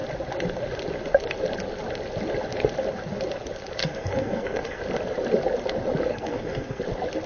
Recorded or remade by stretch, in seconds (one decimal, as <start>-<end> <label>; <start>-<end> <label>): 0.0-3.8 recorded; 3.8-4.8 remade; 4.8-6.1 recorded; 6.1-6.8 remade; 6.8-7.3 recorded